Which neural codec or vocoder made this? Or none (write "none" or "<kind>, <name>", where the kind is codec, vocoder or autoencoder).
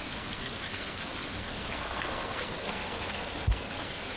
codec, SNAC